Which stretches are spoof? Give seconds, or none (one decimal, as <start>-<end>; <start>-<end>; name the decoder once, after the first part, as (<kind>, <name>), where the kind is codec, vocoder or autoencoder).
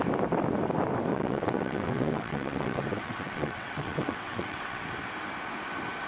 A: 1.1-4.8 (vocoder, WaveNeXt)